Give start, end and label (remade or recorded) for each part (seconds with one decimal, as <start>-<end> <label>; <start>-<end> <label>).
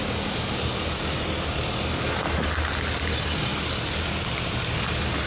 0.0-5.3 recorded